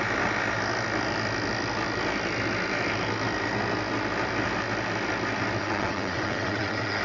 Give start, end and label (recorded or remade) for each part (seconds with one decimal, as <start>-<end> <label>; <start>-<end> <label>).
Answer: 0.0-5.6 recorded; 5.6-7.0 remade